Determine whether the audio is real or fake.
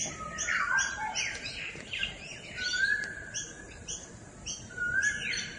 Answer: real